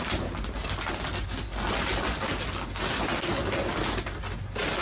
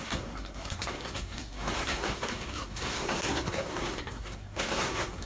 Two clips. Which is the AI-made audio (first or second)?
second